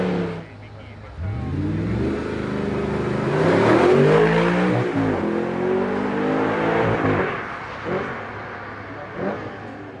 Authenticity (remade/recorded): recorded